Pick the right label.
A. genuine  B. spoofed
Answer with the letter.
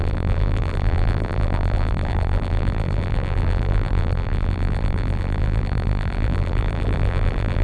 B